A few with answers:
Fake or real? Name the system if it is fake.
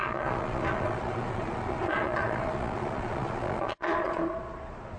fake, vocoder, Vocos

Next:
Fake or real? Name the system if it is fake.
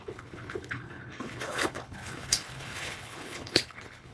fake, codec, HILCodec